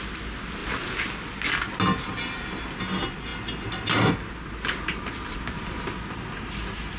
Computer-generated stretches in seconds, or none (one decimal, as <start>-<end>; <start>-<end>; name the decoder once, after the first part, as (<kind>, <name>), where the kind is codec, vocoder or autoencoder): none